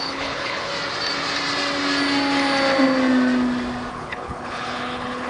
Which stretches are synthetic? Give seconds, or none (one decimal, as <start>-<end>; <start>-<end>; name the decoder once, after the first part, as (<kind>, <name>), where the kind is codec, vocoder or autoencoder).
0.0-0.7 (codec, HILCodec); 3.9-5.3